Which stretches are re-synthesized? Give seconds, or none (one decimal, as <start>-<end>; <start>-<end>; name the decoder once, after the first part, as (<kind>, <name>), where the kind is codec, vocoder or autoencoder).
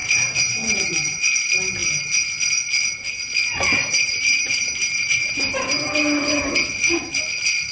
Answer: 0.0-1.2 (vocoder, BigVGAN v2); 3.8-6.5